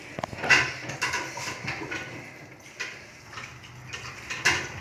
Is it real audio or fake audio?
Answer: real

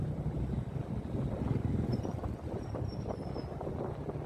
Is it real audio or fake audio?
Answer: real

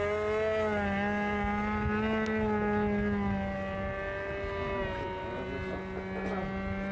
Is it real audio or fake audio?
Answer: real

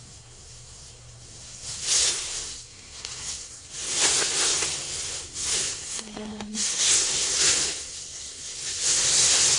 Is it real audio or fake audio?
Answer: fake